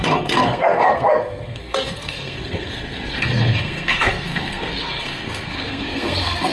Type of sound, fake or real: fake